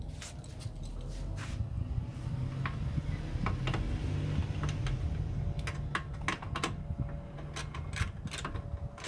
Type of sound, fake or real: real